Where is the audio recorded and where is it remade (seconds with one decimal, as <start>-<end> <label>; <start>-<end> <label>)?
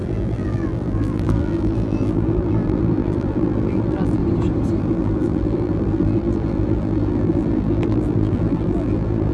0.0-4.2 remade; 4.2-4.8 recorded; 4.8-9.3 remade